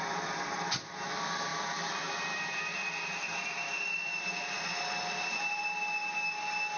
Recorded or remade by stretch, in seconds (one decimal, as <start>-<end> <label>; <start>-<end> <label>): 0.0-1.5 recorded; 1.5-5.6 remade; 5.6-6.8 recorded